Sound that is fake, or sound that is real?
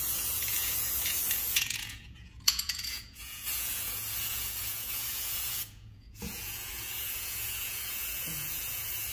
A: fake